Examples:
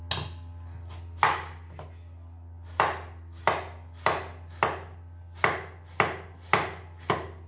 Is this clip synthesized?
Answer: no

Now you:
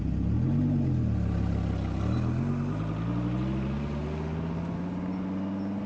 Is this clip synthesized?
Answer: no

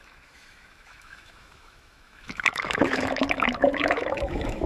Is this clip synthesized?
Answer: yes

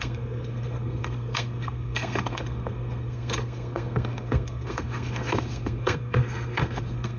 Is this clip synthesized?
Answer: yes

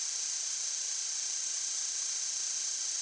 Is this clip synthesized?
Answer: no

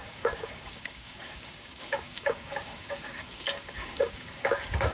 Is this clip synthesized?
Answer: yes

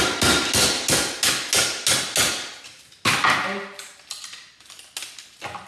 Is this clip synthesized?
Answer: no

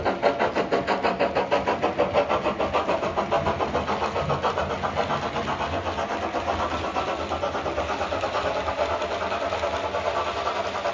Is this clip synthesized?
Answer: no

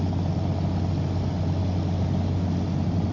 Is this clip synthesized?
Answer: no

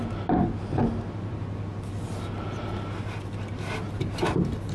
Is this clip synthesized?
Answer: no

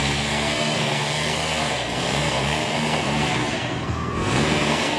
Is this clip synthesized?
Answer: yes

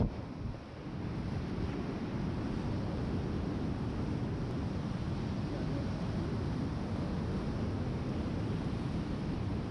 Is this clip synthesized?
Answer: no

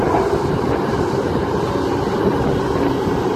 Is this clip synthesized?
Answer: no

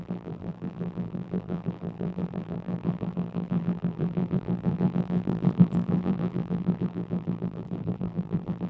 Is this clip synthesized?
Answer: yes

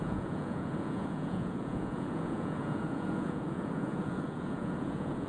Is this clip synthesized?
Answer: yes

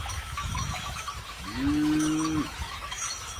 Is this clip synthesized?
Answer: yes